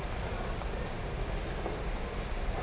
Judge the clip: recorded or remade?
recorded